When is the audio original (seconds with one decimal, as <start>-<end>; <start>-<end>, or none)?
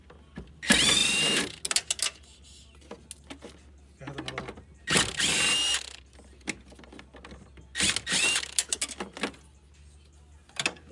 0.0-10.9